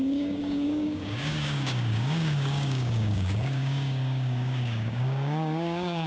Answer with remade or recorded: remade